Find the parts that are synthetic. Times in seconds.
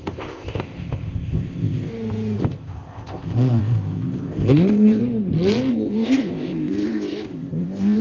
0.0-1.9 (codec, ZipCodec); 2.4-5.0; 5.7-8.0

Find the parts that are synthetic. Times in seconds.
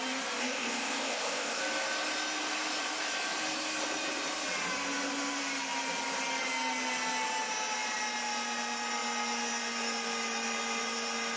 0.4-1.6 (codec, ZipCodec)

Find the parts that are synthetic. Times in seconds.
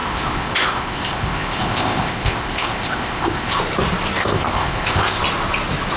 0.0-3.6 (codec, ZipCodec); 4.2-5.2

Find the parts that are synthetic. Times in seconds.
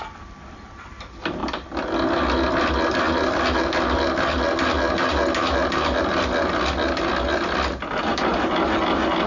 none